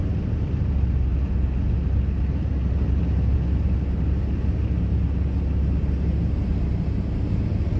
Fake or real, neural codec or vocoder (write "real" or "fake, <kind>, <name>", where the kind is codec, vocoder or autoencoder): real